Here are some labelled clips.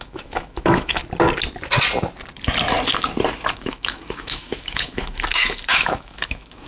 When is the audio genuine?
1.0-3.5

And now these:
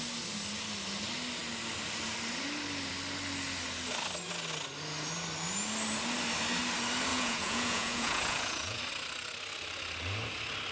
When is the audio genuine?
0.0-7.1; 8.8-10.7

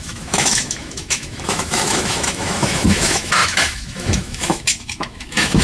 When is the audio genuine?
none

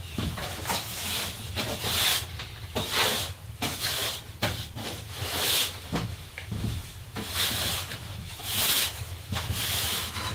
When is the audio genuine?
1.7-3.1; 4.0-4.8

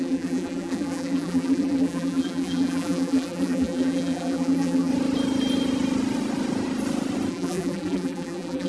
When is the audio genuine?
4.9-7.3

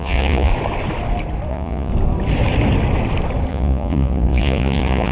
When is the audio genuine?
0.5-1.5; 1.9-3.5

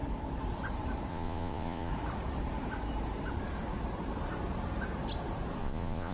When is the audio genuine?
0.0-1.1; 1.9-5.6

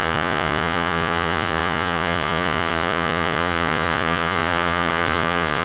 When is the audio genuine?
none